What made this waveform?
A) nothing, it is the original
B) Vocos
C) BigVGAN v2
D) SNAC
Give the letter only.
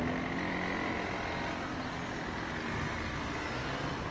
A